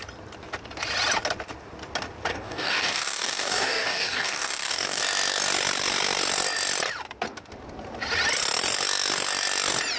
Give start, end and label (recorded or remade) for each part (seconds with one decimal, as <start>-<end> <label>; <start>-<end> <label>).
0.0-2.3 recorded; 2.3-5.0 remade; 5.0-10.0 recorded